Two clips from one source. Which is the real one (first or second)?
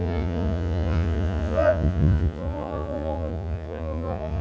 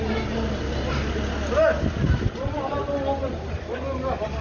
second